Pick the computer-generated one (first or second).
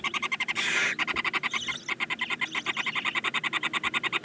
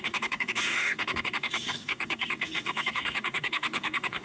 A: second